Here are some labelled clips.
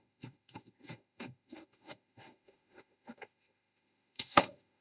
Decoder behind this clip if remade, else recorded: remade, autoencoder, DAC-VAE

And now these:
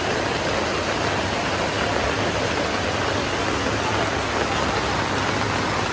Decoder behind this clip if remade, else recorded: recorded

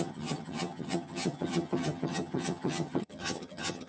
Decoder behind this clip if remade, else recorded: remade, vocoder, HiFi-GAN